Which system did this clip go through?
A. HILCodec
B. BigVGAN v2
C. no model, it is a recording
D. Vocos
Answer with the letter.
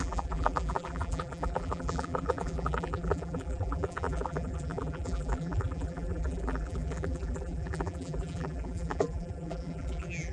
B